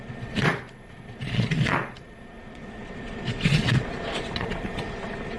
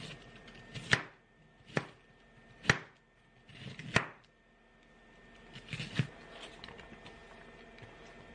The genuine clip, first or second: second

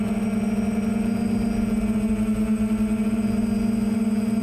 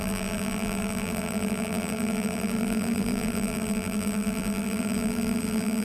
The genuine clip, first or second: first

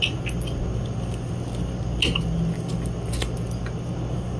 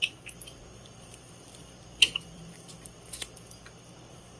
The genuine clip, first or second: first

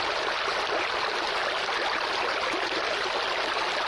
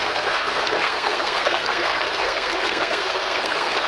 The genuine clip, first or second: first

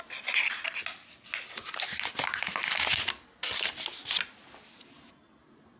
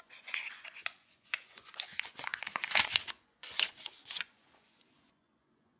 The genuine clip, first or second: first